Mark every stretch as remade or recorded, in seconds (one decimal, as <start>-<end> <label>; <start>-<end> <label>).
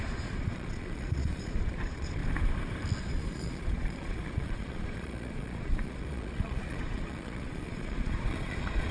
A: 0.0-2.2 remade; 2.2-3.0 recorded; 3.0-8.9 remade